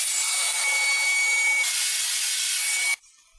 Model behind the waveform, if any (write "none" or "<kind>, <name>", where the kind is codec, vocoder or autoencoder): none